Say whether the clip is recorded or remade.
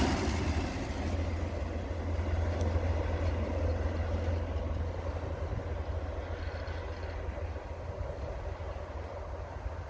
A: recorded